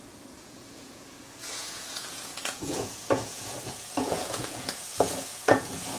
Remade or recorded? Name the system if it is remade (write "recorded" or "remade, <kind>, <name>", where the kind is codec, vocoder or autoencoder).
remade, vocoder, Vocos